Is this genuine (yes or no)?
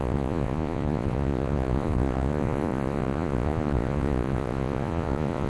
no